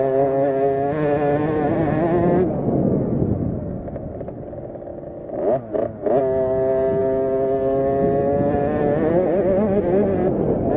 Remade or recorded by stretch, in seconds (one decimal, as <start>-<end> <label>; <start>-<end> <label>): 0.0-10.8 recorded